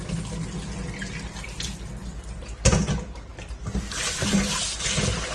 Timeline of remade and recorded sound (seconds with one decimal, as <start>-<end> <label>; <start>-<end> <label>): 0.0-2.0 recorded; 2.0-2.8 remade; 2.8-3.3 recorded; 3.3-4.4 remade; 4.4-5.3 recorded